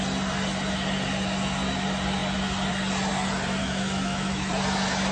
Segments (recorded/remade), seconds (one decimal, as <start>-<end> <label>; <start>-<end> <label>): 0.0-3.6 recorded; 3.6-4.5 remade; 4.5-5.1 recorded